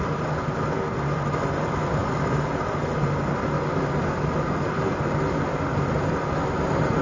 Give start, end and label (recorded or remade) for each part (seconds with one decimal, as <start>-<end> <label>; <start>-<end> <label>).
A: 0.0-7.0 recorded

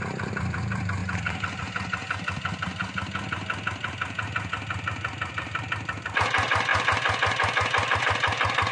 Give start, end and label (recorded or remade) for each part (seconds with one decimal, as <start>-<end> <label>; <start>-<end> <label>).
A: 0.0-1.0 remade; 1.0-1.6 recorded; 1.6-2.8 remade; 2.8-5.3 recorded; 5.3-6.7 remade; 6.7-8.0 recorded; 8.0-8.7 remade

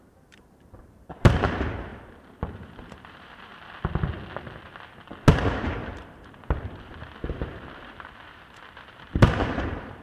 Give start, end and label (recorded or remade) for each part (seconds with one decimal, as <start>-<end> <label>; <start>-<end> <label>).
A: 0.0-1.9 remade; 1.9-2.5 recorded; 2.5-3.5 remade; 3.5-5.3 recorded; 5.3-10.0 remade

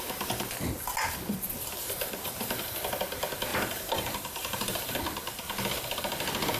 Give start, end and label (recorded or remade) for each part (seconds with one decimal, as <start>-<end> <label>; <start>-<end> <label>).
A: 0.0-1.8 recorded; 1.8-2.7 remade; 2.7-3.5 recorded; 3.5-5.0 remade; 5.0-6.6 recorded